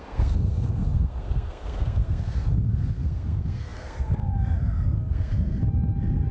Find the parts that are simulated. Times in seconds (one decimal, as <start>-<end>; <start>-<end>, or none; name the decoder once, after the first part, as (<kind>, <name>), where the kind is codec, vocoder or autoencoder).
0.0-5.6 (codec, SNAC)